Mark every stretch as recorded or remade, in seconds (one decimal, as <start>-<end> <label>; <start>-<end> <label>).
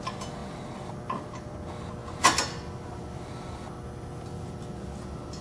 0.0-5.4 recorded